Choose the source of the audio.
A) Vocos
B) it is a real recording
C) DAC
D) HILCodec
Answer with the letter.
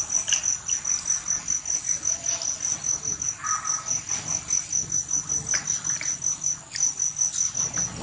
B